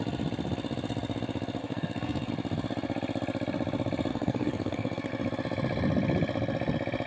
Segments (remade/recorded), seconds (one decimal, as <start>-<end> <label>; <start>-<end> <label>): 0.0-1.6 recorded; 1.6-2.3 remade; 2.3-4.1 recorded; 4.1-5.1 remade; 5.1-7.1 recorded